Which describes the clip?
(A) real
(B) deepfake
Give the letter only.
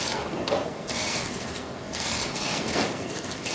B